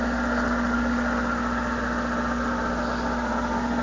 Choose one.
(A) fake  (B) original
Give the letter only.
B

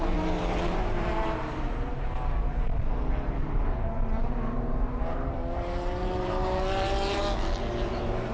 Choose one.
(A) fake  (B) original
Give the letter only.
A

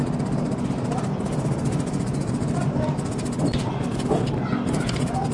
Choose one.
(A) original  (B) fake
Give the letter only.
A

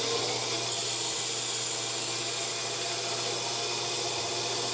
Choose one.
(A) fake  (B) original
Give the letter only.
B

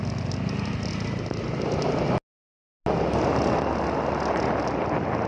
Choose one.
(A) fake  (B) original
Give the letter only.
B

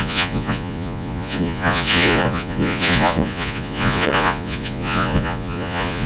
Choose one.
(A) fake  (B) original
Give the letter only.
A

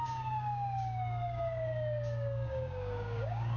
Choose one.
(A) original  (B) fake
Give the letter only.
B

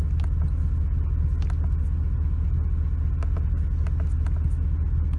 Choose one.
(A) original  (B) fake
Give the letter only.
A